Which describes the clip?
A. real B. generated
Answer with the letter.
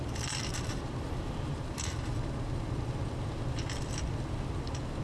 B